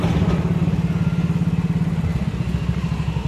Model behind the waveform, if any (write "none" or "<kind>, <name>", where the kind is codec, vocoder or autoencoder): none